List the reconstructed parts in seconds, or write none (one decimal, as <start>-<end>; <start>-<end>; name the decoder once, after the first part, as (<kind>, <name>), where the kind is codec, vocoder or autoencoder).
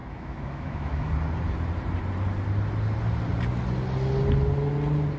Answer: 0.0-1.1 (autoencoder, DAC-VAE)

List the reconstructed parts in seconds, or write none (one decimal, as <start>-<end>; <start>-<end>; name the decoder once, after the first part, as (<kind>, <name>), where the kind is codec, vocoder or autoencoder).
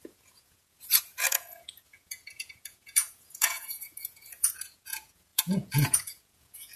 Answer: 0.0-6.8 (vocoder, Vocos)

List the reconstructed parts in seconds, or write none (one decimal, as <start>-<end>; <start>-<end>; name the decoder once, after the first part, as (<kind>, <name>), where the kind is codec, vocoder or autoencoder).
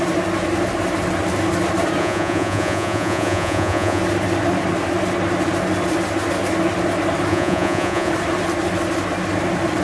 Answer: 2.0-4.0 (vocoder, Vocos); 7.3-8.1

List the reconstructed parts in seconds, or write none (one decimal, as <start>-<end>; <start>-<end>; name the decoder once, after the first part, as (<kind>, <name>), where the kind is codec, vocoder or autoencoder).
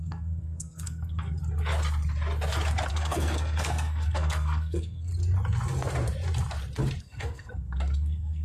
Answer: 0.0-1.4 (codec, SNAC); 2.9-5.1; 7.0-8.4